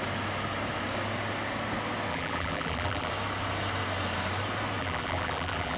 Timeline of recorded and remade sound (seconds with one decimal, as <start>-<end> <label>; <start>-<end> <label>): 0.0-2.1 recorded; 2.1-3.1 remade; 3.1-4.8 recorded; 4.8-5.8 remade